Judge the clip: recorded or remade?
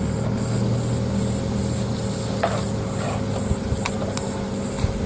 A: recorded